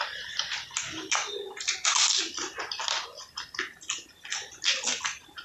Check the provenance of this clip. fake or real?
real